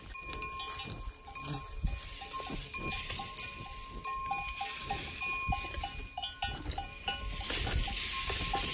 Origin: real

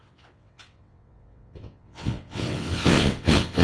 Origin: fake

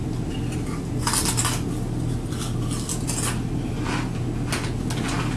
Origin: real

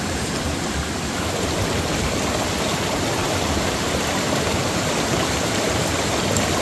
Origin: real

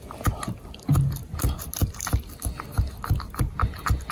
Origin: real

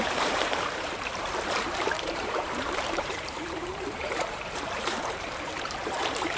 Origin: fake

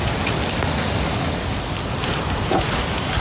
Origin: real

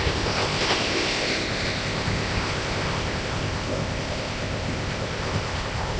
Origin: fake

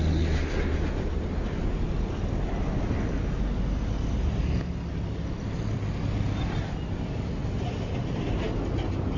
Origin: real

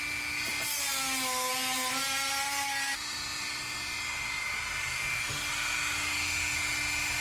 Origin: real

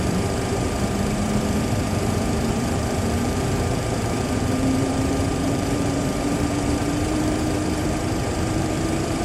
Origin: fake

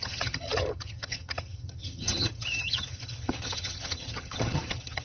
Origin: fake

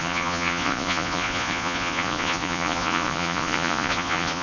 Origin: fake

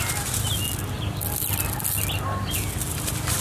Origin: real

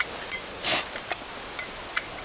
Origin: real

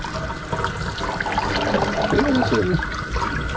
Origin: real